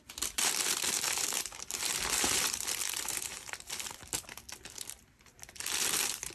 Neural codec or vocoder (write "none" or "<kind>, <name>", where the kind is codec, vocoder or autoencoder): vocoder, BigVGAN v2